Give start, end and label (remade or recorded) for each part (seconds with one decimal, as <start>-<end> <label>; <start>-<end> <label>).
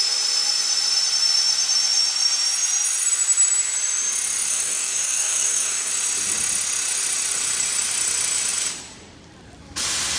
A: 0.0-4.5 recorded; 4.5-5.9 remade; 5.9-10.2 recorded